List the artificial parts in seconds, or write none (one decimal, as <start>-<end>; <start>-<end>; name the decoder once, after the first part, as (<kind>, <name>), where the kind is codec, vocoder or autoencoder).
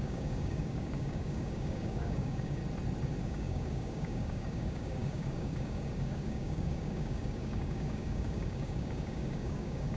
0.0-2.6 (codec, DAC); 3.2-10.0